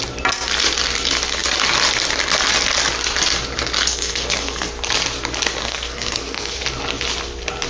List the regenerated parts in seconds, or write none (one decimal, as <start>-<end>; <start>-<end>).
3.9-4.7; 5.6-6.6